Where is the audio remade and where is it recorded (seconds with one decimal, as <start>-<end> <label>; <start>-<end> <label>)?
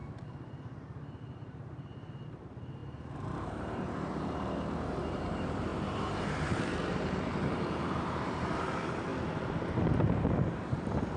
0.0-1.2 recorded; 1.2-9.1 remade; 9.1-9.9 recorded; 9.9-11.2 remade